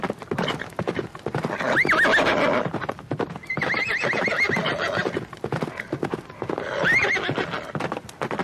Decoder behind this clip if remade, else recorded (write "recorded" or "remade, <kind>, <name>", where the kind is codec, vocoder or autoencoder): recorded